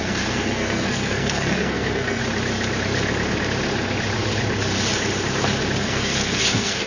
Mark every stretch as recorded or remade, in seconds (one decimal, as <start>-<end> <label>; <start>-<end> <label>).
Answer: 0.0-2.2 remade; 2.2-5.8 recorded; 5.8-6.9 remade